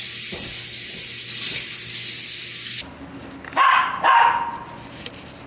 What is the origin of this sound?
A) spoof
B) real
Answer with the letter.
B